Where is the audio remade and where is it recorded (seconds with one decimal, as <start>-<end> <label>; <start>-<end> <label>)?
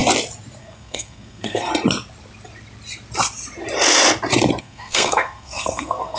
0.0-0.6 recorded; 0.6-1.7 remade; 1.7-4.6 recorded; 4.6-6.2 remade